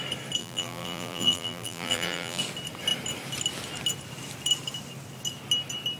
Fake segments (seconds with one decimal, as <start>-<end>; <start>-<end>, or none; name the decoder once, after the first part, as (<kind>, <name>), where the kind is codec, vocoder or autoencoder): 0.4-2.4 (vocoder, BigVGAN v2)